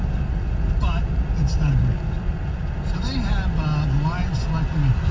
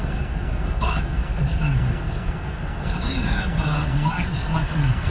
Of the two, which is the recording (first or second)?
first